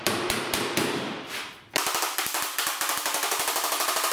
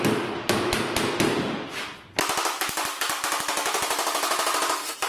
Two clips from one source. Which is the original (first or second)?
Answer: second